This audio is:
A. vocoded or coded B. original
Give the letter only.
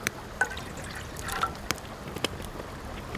B